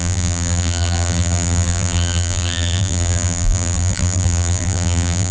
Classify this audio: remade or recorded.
remade